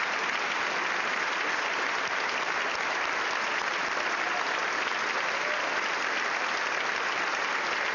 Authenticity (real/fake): real